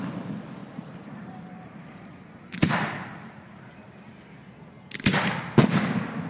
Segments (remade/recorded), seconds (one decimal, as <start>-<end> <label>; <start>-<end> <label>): 0.0-0.6 recorded; 0.6-4.1 remade; 4.1-6.3 recorded